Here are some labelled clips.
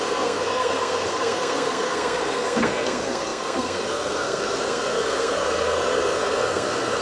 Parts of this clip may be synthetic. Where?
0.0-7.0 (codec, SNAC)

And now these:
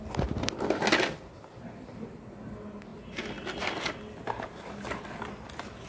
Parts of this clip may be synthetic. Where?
none

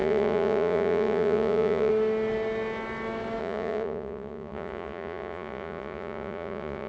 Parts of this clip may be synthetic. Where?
0.0-1.9 (vocoder, Vocos); 3.4-6.9